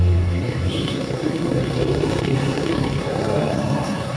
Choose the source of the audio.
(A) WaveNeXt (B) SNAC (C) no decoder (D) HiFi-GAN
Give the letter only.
B